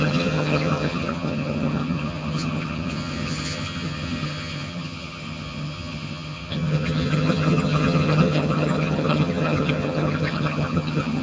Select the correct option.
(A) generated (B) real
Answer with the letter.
A